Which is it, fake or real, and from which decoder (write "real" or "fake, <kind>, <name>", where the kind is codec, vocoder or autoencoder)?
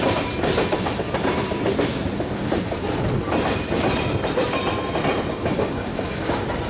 real